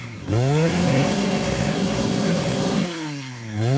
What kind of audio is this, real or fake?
fake